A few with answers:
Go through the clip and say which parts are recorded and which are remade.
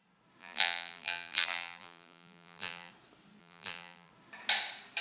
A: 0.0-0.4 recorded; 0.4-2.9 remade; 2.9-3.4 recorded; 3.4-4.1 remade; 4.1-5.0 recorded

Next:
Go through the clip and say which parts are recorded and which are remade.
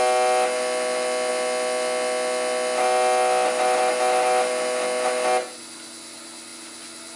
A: 0.0-7.2 recorded